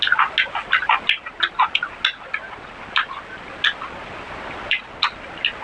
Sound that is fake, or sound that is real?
real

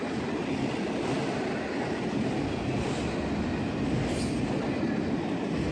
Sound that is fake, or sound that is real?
real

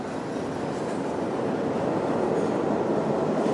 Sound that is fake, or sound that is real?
real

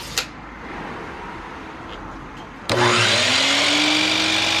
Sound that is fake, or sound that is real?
real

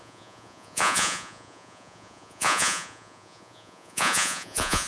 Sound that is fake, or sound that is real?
fake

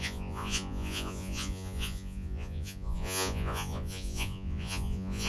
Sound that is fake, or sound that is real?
fake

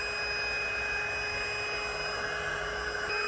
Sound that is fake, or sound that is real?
real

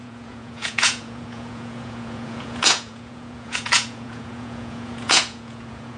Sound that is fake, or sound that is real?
fake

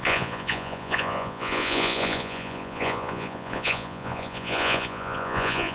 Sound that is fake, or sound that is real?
fake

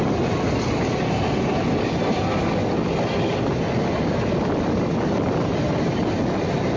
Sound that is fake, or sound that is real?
real